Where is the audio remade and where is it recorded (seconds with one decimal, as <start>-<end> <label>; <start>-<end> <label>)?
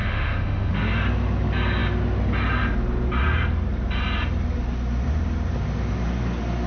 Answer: 0.0-0.7 remade; 0.7-6.7 recorded